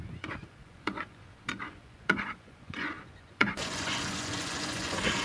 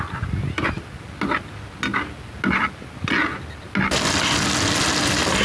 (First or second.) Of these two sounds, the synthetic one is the first